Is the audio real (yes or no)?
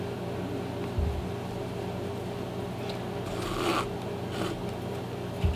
yes